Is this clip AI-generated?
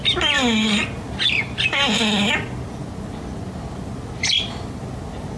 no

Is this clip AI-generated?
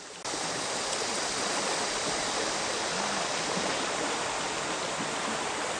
no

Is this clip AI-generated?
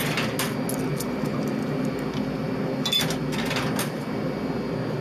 no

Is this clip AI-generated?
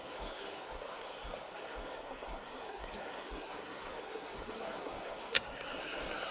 yes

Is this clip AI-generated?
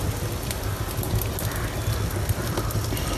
no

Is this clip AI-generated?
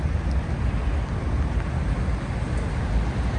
no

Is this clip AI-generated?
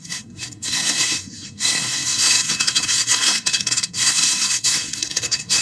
yes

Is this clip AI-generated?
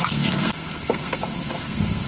yes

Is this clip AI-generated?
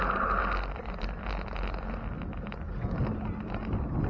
no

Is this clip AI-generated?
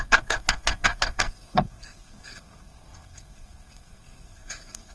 yes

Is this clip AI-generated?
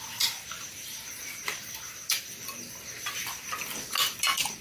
no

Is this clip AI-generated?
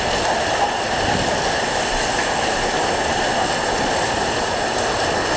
no